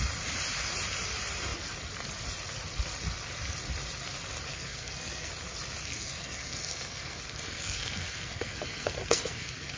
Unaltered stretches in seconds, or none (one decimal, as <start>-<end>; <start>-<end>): 0.0-4.5; 5.3-5.8

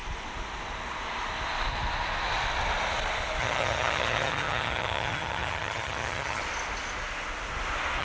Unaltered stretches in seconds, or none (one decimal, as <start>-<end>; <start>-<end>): 0.0-3.4; 6.4-8.0